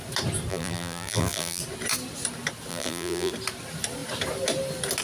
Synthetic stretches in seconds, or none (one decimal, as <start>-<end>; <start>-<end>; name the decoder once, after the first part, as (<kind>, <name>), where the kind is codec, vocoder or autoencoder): 0.5-1.6 (vocoder, BigVGAN v2); 2.7-3.3